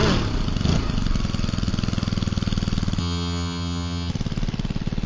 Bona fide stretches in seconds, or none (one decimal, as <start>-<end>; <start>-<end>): 0.0-3.0; 4.1-5.1